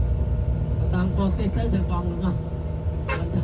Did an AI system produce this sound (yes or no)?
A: no